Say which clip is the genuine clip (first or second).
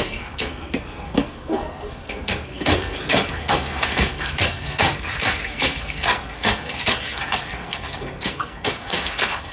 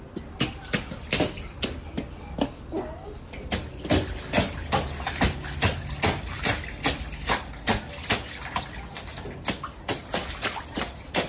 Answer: second